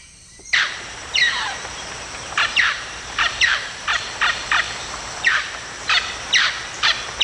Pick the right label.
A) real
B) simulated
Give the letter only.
B